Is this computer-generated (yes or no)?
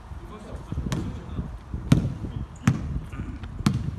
no